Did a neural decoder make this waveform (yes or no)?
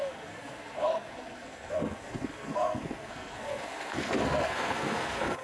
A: yes